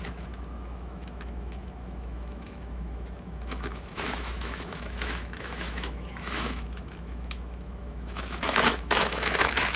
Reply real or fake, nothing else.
fake